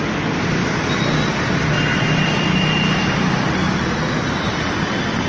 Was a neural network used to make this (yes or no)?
no